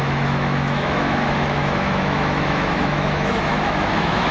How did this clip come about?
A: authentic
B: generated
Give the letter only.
B